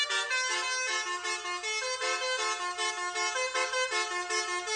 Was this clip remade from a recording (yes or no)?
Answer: no